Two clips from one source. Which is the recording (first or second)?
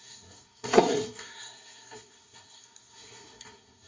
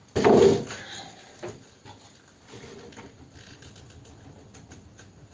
second